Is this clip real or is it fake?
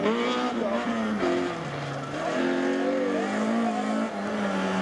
real